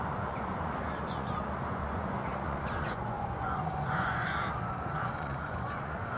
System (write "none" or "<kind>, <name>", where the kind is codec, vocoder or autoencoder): vocoder, Vocos